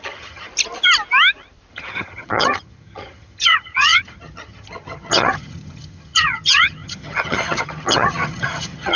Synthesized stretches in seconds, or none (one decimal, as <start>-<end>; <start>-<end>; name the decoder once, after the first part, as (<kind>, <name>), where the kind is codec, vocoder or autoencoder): 0.0-0.5 (vocoder, HiFi-GAN); 1.7-9.0